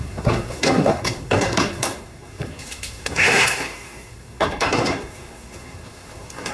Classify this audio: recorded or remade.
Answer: remade